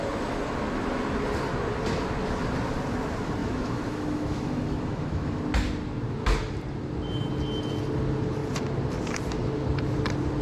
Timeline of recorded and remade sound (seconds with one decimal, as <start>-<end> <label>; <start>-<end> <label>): 0.0-3.4 recorded; 3.4-5.4 remade; 5.4-10.4 recorded

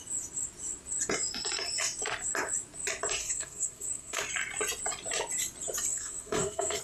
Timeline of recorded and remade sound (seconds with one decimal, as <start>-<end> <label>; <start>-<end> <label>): 0.0-3.2 recorded; 3.2-4.2 remade; 4.2-5.9 recorded; 5.9-6.8 remade

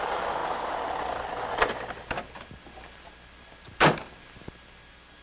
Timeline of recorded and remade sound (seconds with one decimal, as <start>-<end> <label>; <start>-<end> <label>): 0.0-5.2 recorded

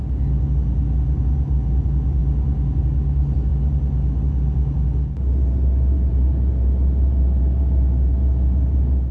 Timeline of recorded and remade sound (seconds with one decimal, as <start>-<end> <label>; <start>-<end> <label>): 0.0-9.1 recorded

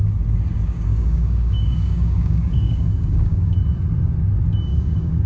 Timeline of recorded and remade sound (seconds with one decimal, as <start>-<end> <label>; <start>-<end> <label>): 0.0-0.5 recorded; 0.5-3.5 remade; 3.5-4.7 recorded; 4.7-5.3 remade

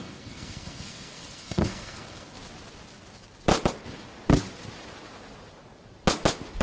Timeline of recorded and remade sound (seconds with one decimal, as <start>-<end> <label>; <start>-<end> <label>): 0.0-2.4 remade; 2.4-6.6 recorded

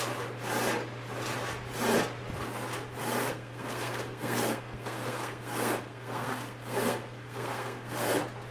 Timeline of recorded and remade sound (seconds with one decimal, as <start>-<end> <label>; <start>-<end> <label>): 0.0-3.2 recorded; 3.2-8.1 remade; 8.1-8.5 recorded